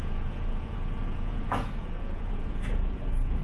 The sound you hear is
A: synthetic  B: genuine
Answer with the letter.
A